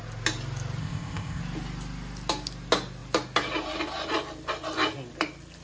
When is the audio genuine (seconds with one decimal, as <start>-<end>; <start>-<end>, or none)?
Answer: 0.0-0.8; 1.4-5.6